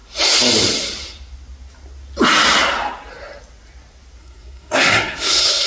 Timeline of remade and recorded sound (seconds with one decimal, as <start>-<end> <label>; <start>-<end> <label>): 0.0-4.2 recorded; 4.2-5.7 remade